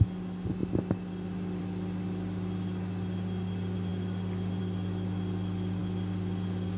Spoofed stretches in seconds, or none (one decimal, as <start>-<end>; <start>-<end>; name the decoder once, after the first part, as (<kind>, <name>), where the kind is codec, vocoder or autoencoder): none